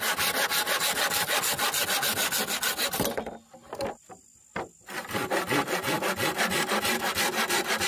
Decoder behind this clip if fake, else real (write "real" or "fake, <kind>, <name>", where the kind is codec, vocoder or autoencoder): real